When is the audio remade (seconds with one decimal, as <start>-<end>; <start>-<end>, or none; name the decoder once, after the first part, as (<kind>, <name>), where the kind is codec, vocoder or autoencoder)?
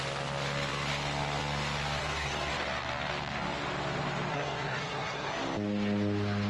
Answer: 2.0-2.5 (codec, SNAC); 4.3-5.3